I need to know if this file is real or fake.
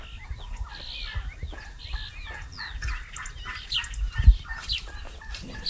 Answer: real